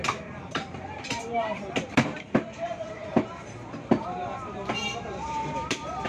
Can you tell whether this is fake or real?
fake